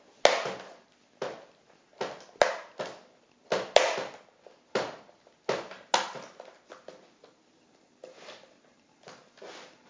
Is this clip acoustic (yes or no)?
yes